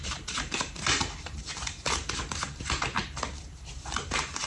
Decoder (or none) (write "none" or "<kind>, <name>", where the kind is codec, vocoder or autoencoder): vocoder, BigVGAN v2